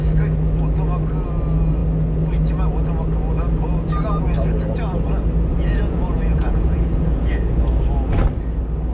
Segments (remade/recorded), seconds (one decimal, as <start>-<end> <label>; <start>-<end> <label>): 0.0-5.5 recorded; 5.5-7.3 remade; 7.3-8.9 recorded